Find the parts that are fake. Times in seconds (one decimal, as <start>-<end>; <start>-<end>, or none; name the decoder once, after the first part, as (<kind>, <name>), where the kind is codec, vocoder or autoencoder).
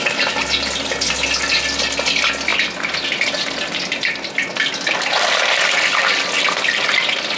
none